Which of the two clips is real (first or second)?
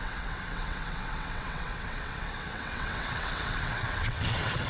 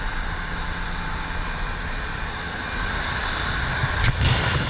second